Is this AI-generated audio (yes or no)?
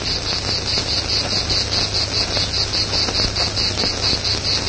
no